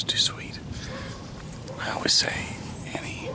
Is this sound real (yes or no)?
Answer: no